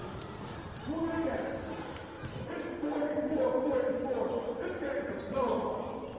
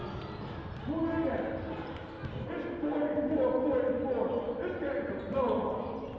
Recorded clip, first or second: second